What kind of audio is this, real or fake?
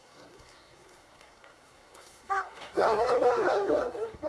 fake